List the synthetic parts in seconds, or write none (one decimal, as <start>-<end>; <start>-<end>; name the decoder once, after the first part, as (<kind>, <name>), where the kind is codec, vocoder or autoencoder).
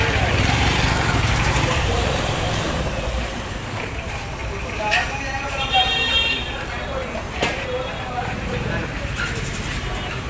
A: 0.0-10.3 (vocoder, BigVGAN v2)